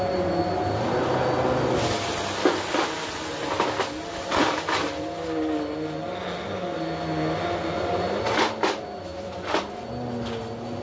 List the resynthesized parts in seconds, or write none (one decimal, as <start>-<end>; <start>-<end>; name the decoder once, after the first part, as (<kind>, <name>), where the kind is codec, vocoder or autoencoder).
none

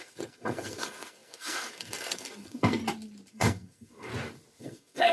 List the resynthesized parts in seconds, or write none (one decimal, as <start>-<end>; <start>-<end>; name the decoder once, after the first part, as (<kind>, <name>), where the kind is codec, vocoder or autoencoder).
0.0-2.8 (codec, SNAC); 3.3-4.1; 4.6-5.1

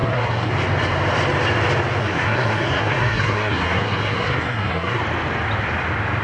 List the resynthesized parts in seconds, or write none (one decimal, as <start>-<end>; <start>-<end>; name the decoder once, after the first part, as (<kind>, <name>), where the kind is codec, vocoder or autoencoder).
0.0-0.5 (codec, SNAC); 2.0-5.0